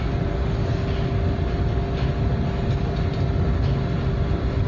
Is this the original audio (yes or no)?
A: yes